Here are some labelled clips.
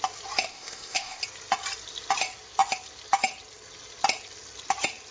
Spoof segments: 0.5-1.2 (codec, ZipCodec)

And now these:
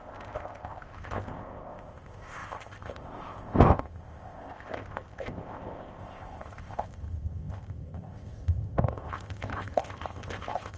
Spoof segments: 0.0-10.8 (codec, ZipCodec)

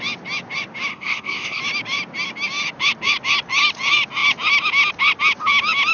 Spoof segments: 0.9-1.6 (codec, ZipCodec)